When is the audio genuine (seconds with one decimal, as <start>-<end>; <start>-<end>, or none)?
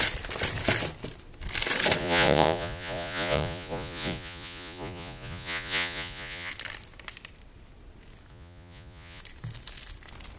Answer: 0.0-2.0; 6.5-8.3; 9.2-10.4